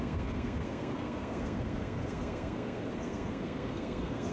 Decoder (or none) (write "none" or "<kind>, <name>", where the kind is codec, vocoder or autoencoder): codec, SNAC